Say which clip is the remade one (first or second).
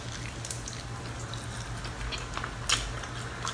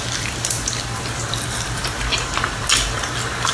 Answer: second